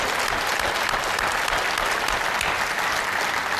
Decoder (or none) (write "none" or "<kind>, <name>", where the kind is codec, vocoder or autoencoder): none